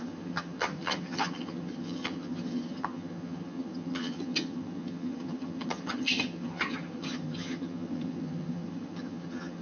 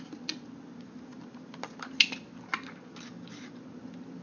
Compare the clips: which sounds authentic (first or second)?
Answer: second